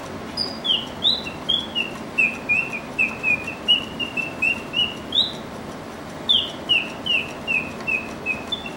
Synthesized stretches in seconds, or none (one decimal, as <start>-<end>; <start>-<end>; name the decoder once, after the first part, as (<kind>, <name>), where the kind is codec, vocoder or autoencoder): none

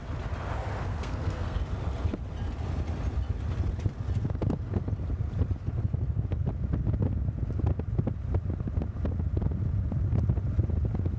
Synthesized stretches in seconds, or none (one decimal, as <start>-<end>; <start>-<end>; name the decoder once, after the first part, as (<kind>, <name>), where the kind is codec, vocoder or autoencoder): 0.9-1.6 (codec, SNAC)

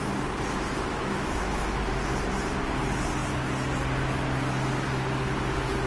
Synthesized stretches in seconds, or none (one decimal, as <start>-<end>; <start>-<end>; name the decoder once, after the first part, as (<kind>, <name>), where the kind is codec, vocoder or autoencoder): 0.9-1.9 (autoencoder, DAC-VAE)

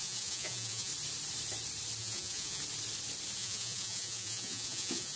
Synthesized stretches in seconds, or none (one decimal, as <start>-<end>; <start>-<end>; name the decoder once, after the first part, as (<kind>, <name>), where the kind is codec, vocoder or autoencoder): 0.0-0.9 (vocoder, Vocos); 2.0-2.6; 3.4-5.2